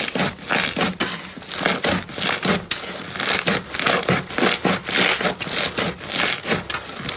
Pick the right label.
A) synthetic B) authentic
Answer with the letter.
B